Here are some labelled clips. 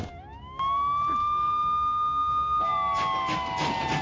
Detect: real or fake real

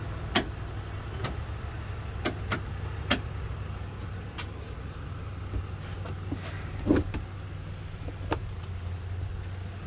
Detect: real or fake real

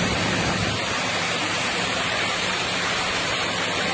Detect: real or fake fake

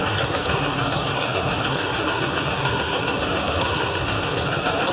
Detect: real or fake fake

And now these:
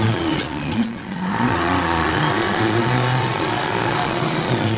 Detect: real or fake fake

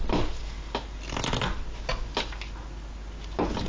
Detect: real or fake real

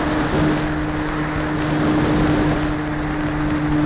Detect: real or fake real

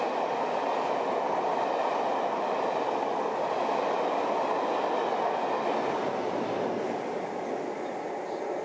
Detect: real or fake real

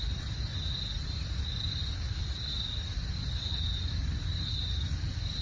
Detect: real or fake real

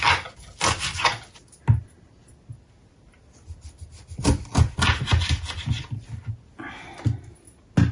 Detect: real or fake real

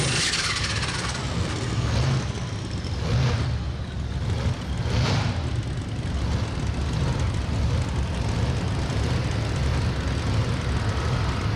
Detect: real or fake real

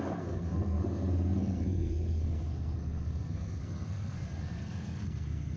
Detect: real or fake fake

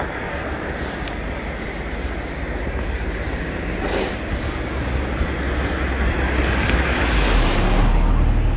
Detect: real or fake real